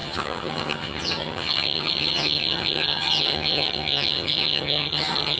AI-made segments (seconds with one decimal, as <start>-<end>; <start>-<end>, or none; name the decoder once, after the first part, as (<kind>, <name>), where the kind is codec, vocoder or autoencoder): 0.0-5.4 (vocoder, HiFi-GAN)